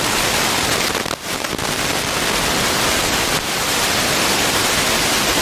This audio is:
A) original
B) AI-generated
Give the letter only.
A